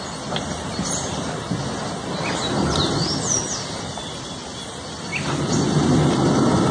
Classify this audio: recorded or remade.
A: recorded